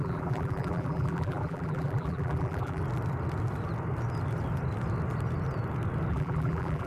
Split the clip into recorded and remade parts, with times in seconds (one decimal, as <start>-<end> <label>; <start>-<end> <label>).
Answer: 0.0-2.8 remade; 2.8-6.1 recorded; 6.1-6.9 remade